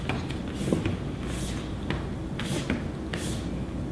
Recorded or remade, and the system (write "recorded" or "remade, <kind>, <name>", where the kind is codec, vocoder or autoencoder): recorded